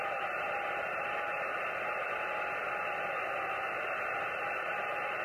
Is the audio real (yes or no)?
yes